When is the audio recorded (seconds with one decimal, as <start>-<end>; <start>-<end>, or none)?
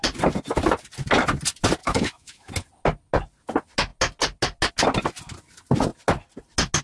0.0-1.8; 2.5-6.8